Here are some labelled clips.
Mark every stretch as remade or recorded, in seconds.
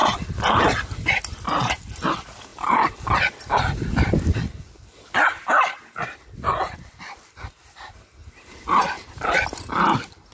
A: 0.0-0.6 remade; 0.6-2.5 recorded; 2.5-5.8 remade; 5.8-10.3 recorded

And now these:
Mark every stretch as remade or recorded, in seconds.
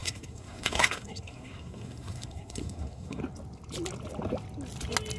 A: 0.0-3.2 remade; 3.2-5.2 recorded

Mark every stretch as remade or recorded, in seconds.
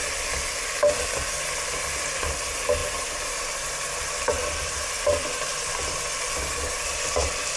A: 0.0-2.8 recorded; 2.8-4.3 remade; 4.3-7.6 recorded